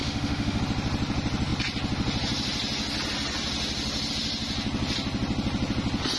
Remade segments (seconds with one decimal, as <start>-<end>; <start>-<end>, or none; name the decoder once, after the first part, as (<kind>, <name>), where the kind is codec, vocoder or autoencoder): 0.0-0.6 (autoencoder, DAC-VAE)